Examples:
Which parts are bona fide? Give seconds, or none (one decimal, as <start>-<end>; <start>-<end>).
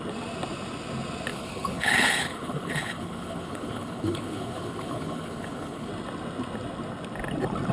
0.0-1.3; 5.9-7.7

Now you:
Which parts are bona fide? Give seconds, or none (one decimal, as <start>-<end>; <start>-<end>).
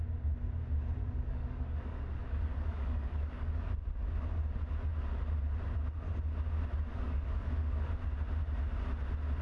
0.0-1.0; 3.7-6.9; 7.9-9.4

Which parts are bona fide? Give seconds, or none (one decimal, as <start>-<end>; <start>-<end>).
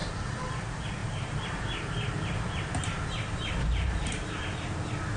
0.6-1.0; 4.1-5.2